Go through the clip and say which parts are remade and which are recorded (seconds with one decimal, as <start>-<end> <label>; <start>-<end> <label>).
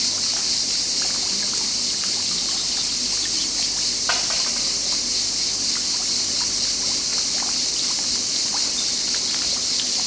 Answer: 0.0-10.1 recorded